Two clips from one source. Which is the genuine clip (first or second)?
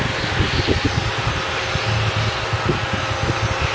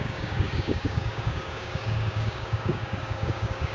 first